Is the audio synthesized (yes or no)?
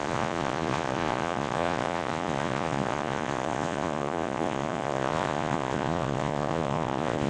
yes